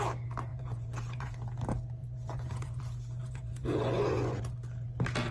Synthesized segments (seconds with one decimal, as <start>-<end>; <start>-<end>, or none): 0.5-1.3; 2.0-2.8; 3.2-4.4